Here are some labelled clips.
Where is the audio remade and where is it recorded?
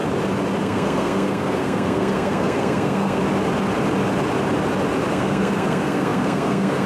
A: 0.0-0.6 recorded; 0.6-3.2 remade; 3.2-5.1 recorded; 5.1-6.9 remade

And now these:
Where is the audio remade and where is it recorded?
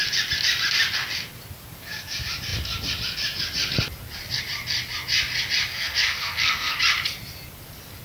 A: 0.0-5.7 recorded; 5.7-6.8 remade; 6.8-8.0 recorded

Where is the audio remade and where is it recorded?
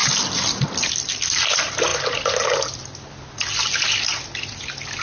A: 0.0-5.0 recorded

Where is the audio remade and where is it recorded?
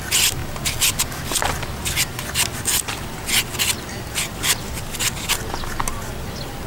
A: 0.0-6.7 recorded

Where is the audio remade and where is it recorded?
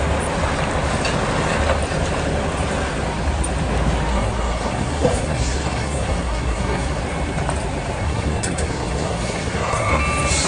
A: 0.0-4.1 recorded; 4.1-7.0 remade; 7.0-8.0 recorded; 8.0-10.0 remade; 10.0-10.5 recorded